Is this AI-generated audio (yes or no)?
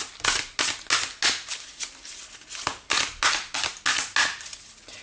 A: no